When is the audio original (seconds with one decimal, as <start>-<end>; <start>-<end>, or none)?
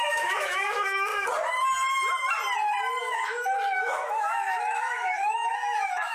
1.1-3.0